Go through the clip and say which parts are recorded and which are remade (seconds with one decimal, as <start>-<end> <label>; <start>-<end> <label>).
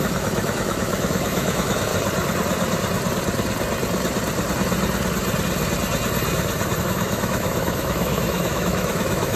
0.0-1.9 remade; 1.9-6.8 recorded; 6.8-9.4 remade